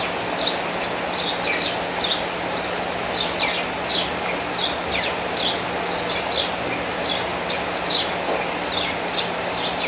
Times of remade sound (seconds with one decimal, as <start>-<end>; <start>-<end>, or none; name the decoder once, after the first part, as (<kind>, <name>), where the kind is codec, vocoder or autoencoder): none